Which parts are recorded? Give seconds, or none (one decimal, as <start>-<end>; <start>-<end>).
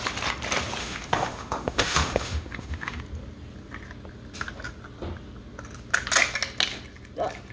0.0-0.8; 3.0-7.5